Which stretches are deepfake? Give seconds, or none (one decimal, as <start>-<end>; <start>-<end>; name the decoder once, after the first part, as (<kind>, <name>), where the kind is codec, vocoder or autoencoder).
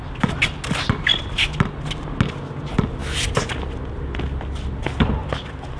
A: none